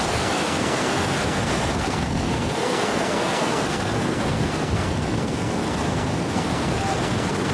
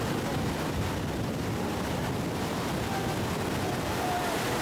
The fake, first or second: first